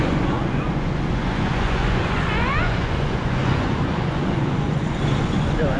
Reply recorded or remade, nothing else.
remade